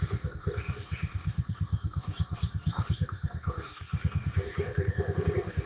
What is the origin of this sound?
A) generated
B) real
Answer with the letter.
A